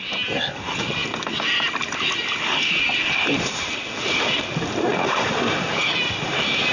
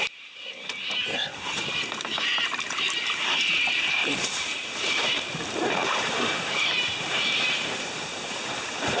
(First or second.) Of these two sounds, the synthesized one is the second